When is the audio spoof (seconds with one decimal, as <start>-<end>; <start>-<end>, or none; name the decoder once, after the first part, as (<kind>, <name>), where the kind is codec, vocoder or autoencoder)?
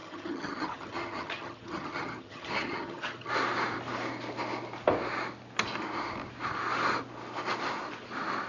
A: 0.0-3.3 (vocoder, HiFi-GAN)